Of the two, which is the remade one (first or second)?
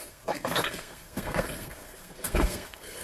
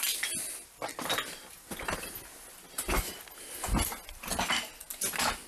first